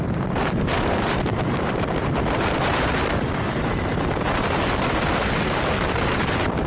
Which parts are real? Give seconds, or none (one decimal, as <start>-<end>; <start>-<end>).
none